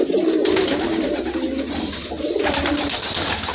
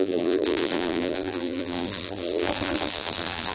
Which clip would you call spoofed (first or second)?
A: second